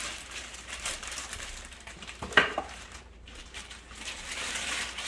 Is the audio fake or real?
fake